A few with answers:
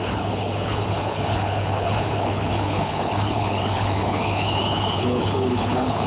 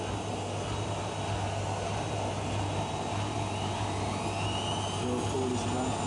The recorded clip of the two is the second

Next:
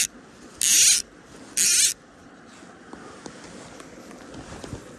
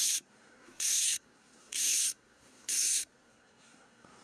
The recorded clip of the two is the first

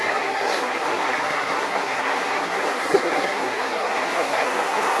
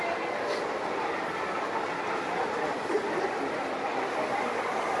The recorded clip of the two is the second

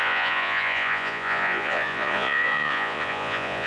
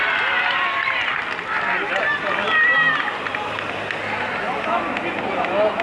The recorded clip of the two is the second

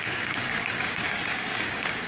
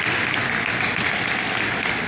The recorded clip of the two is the second